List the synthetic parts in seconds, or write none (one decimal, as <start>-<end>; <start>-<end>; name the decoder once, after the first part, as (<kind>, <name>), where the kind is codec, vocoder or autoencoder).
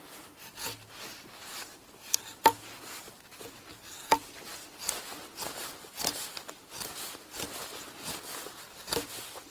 none